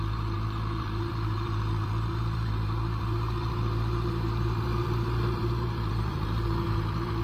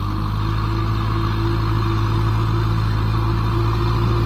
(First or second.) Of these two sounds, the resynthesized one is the first